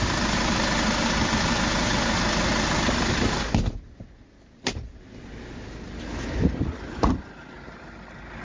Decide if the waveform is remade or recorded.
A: recorded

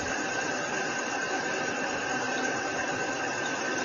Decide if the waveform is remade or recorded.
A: remade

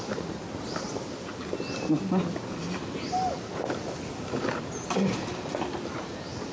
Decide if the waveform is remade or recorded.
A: recorded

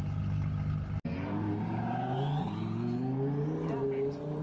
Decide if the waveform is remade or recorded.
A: recorded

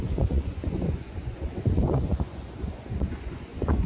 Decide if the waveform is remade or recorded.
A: remade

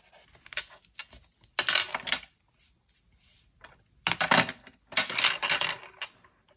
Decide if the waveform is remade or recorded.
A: recorded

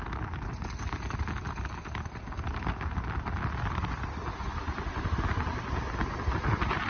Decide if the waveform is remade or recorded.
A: recorded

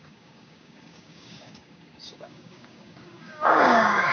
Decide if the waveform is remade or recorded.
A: remade